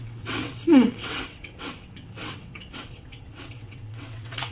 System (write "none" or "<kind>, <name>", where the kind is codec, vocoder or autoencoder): vocoder, WaveNeXt